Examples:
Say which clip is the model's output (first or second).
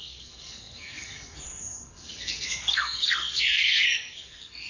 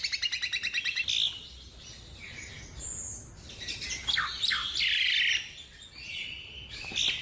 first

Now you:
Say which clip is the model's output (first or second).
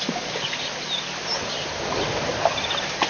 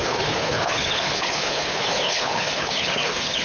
second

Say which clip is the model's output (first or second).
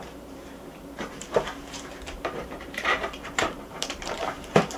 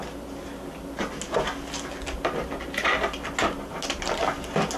first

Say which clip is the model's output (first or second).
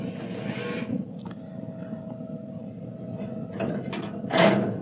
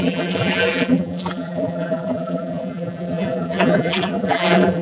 second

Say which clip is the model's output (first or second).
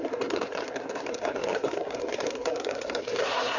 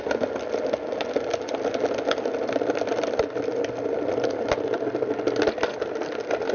first